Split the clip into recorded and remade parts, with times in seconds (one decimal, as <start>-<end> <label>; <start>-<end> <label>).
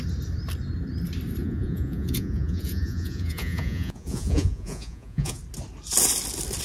0.0-1.4 recorded; 1.4-5.4 remade; 5.4-6.6 recorded